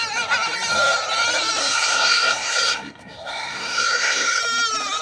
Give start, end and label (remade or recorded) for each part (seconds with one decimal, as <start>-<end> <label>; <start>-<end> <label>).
0.0-1.6 recorded; 1.6-4.4 remade; 4.4-5.0 recorded